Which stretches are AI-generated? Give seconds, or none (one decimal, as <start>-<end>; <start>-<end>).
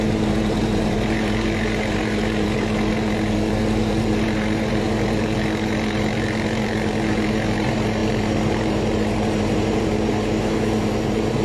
0.0-11.4